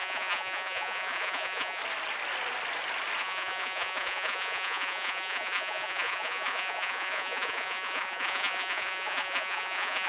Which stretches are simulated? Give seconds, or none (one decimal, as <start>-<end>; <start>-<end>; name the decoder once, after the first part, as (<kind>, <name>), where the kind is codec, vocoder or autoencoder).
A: 0.0-1.8 (vocoder, Vocos); 3.2-10.1